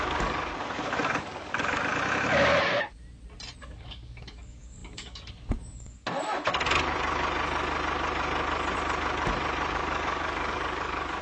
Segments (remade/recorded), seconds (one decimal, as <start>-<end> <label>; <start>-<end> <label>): 0.0-1.9 remade; 1.9-3.6 recorded; 3.6-6.0 remade; 6.0-9.7 recorded; 9.7-11.2 remade